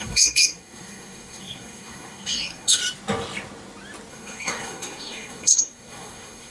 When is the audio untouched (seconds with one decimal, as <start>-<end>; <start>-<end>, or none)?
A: 2.8-4.1